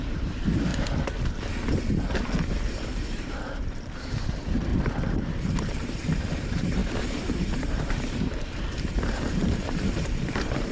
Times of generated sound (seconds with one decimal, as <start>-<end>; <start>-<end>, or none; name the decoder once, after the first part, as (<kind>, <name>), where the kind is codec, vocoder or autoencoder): 0.0-0.7 (vocoder, BigVGAN v2); 2.5-4.7; 5.6-10.7